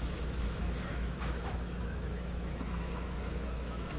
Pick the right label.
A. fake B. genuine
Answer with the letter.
A